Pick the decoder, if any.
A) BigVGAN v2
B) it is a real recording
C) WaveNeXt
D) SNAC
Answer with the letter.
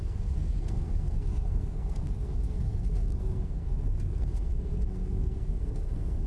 D